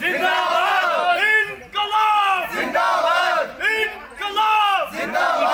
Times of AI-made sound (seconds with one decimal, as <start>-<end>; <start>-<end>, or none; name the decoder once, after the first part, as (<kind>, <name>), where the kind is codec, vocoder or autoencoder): none